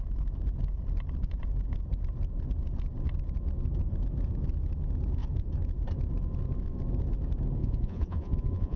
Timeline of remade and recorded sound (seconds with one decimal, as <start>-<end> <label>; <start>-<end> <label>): 0.0-7.6 recorded; 7.6-8.8 remade